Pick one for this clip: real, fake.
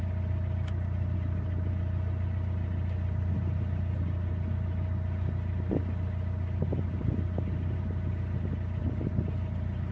real